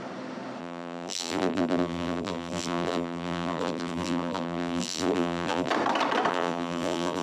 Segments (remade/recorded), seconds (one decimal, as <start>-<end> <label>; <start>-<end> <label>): 0.0-0.6 recorded; 0.6-5.7 remade; 5.7-6.3 recorded; 6.3-7.2 remade